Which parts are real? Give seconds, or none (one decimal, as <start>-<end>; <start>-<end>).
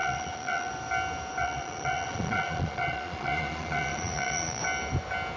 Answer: 0.7-1.4; 4.6-5.4